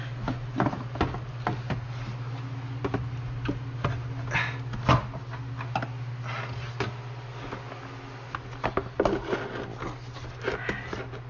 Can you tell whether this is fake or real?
real